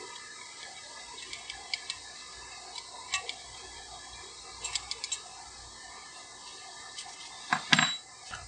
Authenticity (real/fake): real